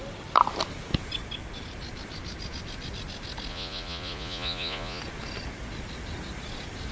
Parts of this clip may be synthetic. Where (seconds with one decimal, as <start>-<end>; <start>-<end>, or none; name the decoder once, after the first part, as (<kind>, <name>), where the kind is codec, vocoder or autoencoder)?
3.5-5.0 (vocoder, Vocos)